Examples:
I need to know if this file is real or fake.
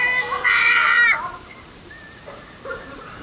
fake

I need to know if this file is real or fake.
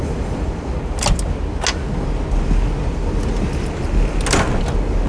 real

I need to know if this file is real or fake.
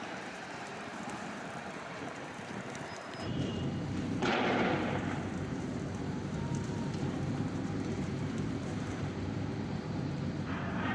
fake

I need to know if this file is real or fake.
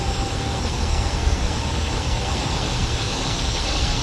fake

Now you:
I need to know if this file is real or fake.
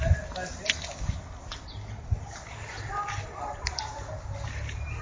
real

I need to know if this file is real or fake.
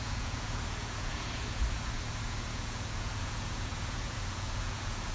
fake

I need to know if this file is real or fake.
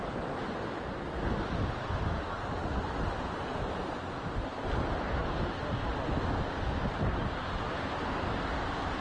real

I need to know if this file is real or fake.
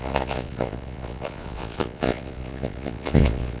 fake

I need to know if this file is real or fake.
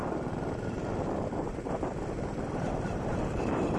fake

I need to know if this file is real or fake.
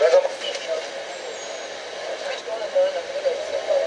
real